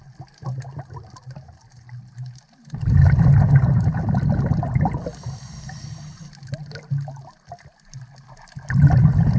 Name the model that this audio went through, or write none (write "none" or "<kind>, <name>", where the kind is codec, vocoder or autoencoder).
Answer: none